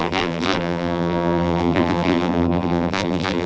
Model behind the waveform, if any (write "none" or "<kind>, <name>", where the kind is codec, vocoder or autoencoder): vocoder, BigVGAN v2